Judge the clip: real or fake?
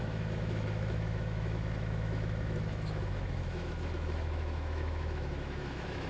fake